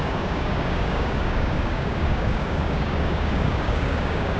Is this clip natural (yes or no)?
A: no